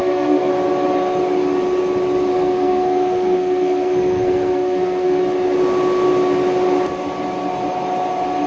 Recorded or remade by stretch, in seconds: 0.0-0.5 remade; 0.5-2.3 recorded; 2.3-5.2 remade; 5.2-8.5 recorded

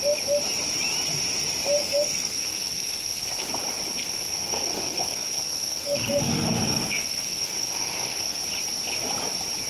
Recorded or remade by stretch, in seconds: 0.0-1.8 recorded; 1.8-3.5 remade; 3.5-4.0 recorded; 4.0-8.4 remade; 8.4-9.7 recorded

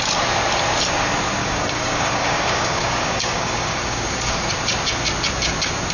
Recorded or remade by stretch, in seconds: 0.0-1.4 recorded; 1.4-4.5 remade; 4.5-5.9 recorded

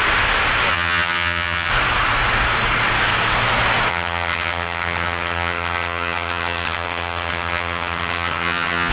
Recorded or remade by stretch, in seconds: 0.0-0.7 recorded; 0.7-1.7 remade; 1.7-3.9 recorded; 3.9-8.9 remade